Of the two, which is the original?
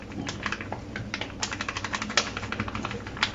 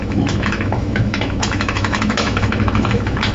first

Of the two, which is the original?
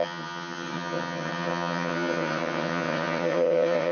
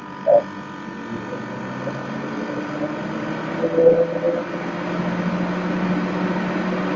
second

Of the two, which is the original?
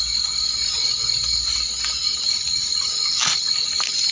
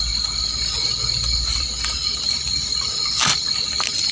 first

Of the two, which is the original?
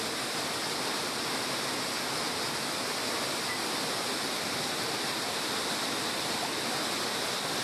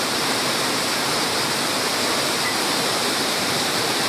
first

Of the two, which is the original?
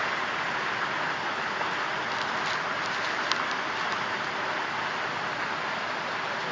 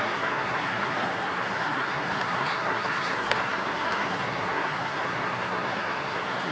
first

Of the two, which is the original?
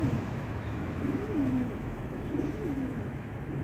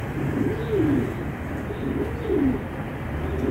second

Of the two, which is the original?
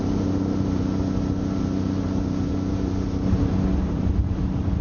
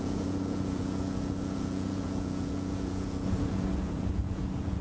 first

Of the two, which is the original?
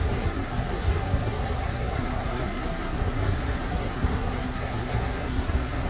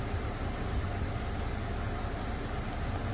second